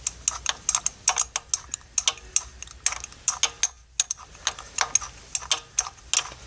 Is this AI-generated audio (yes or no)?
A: no